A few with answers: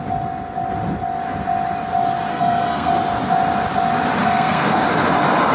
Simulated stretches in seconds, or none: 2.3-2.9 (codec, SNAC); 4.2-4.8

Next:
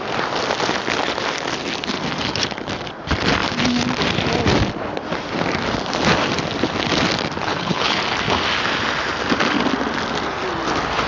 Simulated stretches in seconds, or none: 7.4-8.0 (codec, HILCodec)

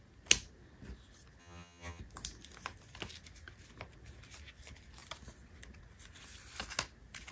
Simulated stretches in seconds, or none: 1.4-2.0 (vocoder, HiFi-GAN)

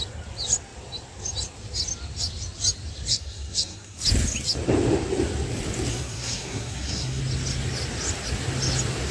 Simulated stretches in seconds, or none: 3.1-4.0 (codec, SNAC); 5.9-7.2

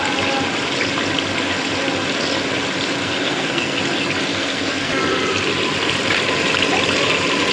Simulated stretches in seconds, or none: 3.0-3.8 (codec, SNAC); 4.3-4.9